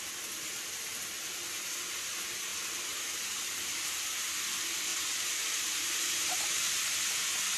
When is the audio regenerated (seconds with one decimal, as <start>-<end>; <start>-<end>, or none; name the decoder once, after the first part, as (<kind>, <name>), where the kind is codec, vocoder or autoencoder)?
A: 2.5-3.8 (vocoder, BigVGAN v2); 4.9-7.0